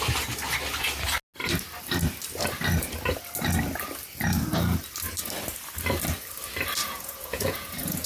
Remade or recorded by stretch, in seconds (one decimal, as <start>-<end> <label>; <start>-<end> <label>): 0.0-6.8 recorded; 6.8-8.1 remade

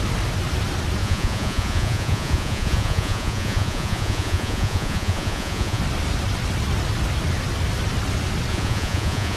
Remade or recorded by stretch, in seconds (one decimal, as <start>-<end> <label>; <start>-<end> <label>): 0.0-1.0 recorded; 1.0-5.8 remade; 5.8-8.5 recorded; 8.5-9.4 remade

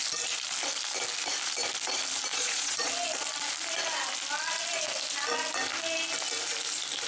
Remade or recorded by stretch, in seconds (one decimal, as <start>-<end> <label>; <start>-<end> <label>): 0.0-2.3 recorded; 2.3-2.9 remade; 2.9-7.1 recorded

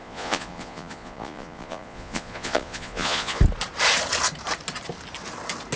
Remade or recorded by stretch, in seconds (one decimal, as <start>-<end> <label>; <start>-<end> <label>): 0.0-3.4 remade; 3.4-5.8 recorded

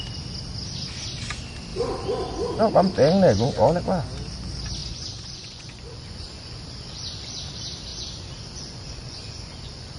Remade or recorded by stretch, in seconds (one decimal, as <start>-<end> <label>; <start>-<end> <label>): 0.0-4.8 recorded; 4.8-7.4 remade; 7.4-7.9 recorded; 7.9-10.0 remade

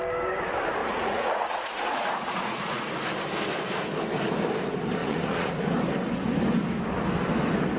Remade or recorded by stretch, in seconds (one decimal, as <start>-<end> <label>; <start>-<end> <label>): 0.0-0.8 recorded; 0.8-2.9 remade; 2.9-5.0 recorded; 5.0-5.5 remade; 5.5-7.8 recorded